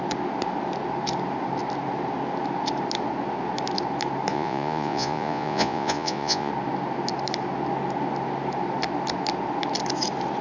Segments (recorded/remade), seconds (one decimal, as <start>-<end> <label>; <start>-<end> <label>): 0.0-4.3 recorded; 4.3-6.5 remade; 6.5-10.4 recorded